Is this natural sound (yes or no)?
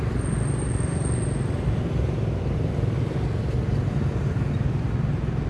yes